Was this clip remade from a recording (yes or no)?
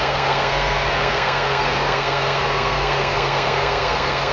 yes